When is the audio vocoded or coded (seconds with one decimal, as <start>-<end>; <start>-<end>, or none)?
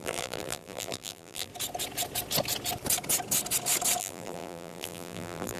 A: 0.0-1.5; 4.0-5.6